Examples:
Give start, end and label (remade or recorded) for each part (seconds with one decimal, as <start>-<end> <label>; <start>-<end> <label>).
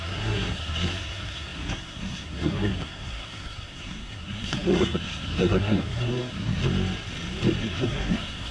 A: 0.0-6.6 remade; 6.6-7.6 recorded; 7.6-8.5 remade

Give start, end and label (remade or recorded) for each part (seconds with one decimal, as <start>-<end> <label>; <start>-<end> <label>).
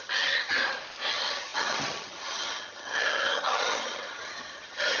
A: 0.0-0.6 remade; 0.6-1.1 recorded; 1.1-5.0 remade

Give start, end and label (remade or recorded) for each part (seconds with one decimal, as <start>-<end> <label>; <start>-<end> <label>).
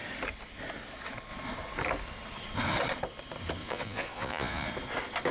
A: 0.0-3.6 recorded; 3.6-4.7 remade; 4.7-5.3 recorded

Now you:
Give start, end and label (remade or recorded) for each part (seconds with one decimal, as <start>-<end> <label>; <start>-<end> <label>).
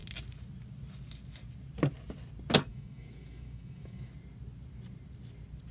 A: 0.0-2.7 recorded; 2.7-4.1 remade; 4.1-5.7 recorded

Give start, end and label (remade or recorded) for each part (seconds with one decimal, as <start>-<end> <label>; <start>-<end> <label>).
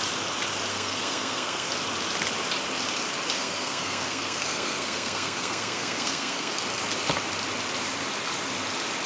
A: 0.0-0.7 recorded; 0.7-1.7 remade; 1.7-3.4 recorded; 3.4-6.6 remade; 6.6-9.1 recorded